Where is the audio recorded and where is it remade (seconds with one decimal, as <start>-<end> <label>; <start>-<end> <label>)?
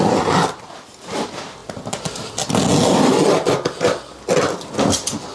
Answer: 0.0-5.3 recorded